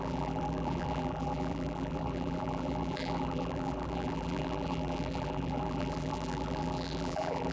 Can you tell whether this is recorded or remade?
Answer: remade